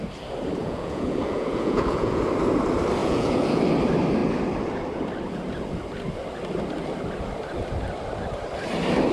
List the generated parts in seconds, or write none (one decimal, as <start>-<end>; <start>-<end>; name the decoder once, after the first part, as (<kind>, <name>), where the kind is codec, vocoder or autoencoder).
0.6-2.2 (vocoder, Vocos); 3.0-3.6

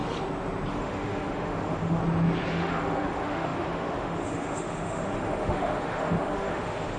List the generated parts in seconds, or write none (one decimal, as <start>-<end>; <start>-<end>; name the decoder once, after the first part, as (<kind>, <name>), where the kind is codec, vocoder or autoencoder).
0.7-2.0 (autoencoder, DAC-VAE); 2.5-7.0

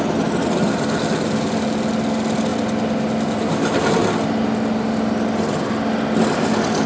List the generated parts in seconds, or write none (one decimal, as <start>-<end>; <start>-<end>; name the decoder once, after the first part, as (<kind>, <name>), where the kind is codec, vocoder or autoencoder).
none

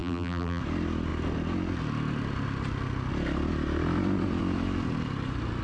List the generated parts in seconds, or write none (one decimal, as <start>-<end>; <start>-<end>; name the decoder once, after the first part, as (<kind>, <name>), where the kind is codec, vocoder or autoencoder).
0.0-0.6 (vocoder, BigVGAN v2)

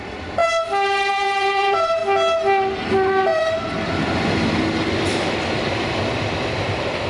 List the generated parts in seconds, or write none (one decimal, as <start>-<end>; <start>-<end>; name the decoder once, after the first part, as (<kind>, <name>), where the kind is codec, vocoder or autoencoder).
0.0-0.4 (vocoder, BigVGAN v2); 1.1-2.0; 2.9-7.1